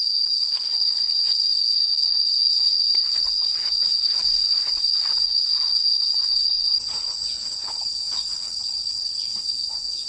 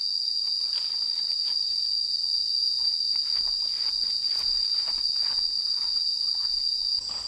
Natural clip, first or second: second